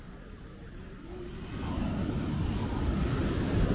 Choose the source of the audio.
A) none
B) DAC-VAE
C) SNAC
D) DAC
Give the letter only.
A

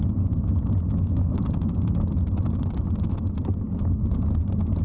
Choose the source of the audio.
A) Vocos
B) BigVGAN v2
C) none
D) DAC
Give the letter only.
C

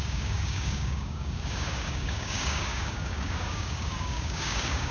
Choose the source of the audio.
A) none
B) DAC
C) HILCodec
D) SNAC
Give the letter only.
B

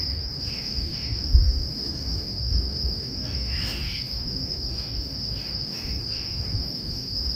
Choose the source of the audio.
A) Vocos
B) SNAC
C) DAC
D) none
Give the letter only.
C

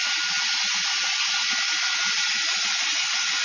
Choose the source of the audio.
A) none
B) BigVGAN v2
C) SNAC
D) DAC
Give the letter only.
A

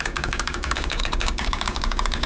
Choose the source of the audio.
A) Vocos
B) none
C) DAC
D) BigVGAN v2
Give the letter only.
C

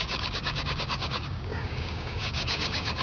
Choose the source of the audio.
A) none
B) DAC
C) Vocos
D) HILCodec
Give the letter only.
B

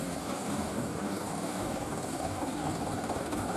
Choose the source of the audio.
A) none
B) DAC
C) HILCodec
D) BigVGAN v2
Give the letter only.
B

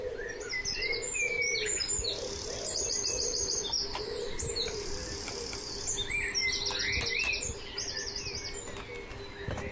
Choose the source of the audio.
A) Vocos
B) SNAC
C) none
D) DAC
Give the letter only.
C